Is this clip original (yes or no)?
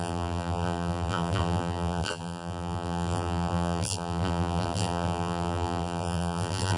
no